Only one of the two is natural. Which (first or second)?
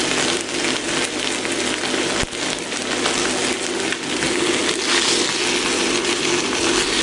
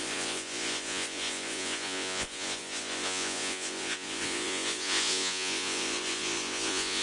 first